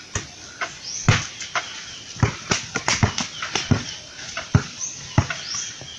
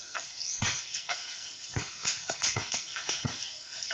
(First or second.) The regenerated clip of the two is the second